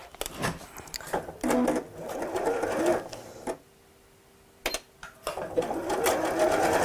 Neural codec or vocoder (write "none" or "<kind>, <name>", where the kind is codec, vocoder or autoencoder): none